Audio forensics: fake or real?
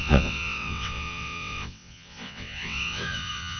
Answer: fake